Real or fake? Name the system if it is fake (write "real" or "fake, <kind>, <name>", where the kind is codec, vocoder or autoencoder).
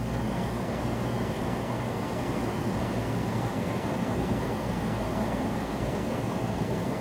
fake, codec, SNAC